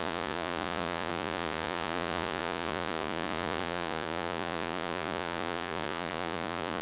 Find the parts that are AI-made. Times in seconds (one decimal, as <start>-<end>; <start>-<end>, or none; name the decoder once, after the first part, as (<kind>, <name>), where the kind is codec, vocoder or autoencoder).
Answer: 0.0-6.8 (vocoder, Vocos)